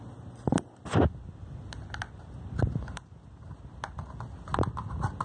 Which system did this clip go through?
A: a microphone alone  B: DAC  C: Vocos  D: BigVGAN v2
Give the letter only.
A